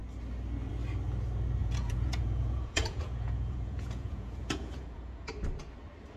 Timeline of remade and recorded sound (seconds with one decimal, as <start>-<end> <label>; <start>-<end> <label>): 0.0-1.6 recorded; 1.6-5.3 remade; 5.3-6.2 recorded

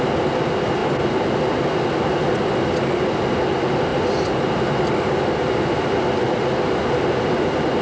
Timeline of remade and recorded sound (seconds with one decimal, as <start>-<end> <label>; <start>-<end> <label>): 0.0-7.8 recorded

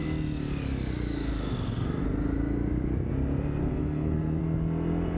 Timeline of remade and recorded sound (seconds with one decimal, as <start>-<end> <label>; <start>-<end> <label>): 0.0-3.6 recorded; 3.6-4.4 remade; 4.4-5.2 recorded

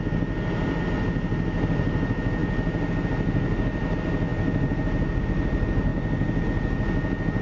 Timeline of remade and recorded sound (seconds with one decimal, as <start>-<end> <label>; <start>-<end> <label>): 0.0-7.4 recorded

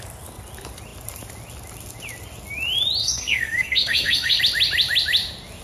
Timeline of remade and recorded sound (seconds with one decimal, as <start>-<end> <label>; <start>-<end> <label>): 0.0-3.0 recorded; 3.0-4.4 remade; 4.4-5.6 recorded

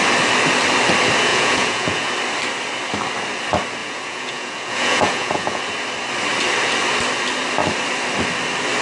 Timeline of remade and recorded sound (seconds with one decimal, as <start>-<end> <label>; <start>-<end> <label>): 0.0-1.3 recorded; 1.3-2.1 remade; 2.1-3.8 recorded; 3.8-5.6 remade; 5.6-8.8 recorded

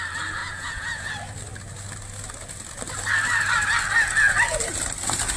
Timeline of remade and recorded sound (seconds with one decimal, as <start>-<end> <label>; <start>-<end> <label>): 0.0-0.4 recorded; 0.4-1.1 remade; 1.1-5.4 recorded

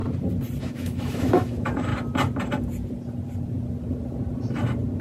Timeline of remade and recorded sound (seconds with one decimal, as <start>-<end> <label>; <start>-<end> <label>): 0.0-0.6 recorded; 0.6-1.9 remade; 1.9-5.0 recorded